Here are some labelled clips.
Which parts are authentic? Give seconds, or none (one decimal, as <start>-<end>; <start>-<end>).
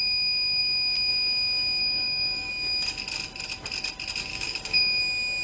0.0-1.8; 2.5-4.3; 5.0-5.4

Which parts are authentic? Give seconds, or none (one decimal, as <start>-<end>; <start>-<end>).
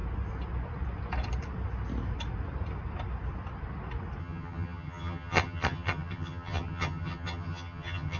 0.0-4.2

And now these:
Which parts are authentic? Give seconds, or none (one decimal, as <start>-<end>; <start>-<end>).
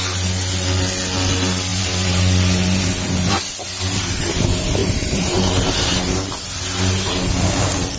0.0-1.7; 2.2-4.8; 6.1-8.0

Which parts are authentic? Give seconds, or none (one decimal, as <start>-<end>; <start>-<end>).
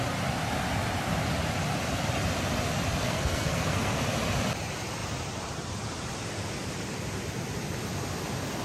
0.0-3.0; 4.0-8.6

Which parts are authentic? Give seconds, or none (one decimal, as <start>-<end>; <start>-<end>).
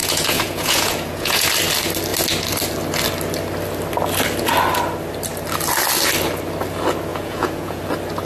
1.5-7.1; 7.8-8.3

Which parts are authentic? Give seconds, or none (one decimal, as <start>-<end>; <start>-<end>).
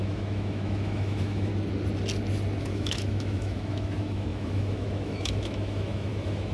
1.5-2.6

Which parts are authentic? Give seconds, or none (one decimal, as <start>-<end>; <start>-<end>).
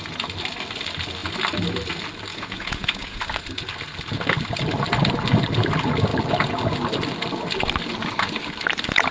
0.0-2.3; 3.2-9.1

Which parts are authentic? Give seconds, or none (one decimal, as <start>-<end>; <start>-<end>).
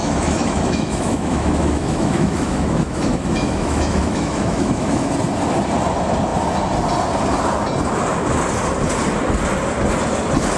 5.1-10.6